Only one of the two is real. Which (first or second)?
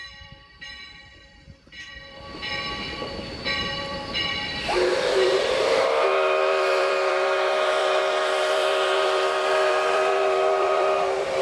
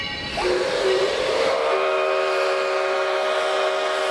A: second